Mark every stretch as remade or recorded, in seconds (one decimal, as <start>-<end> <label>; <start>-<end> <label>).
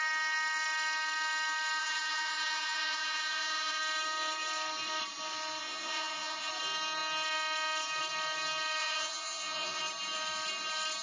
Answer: 0.0-1.8 recorded; 1.8-3.8 remade; 3.8-5.6 recorded; 5.6-6.5 remade; 6.5-8.8 recorded; 8.8-9.8 remade; 9.8-11.0 recorded